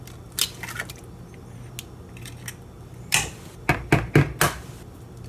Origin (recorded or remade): recorded